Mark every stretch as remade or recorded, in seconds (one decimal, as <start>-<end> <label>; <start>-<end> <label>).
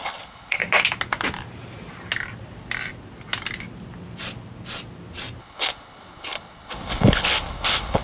0.0-0.6 remade; 0.6-5.4 recorded; 5.4-8.0 remade